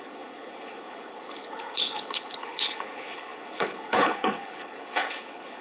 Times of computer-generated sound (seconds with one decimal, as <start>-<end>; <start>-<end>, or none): 0.0-5.6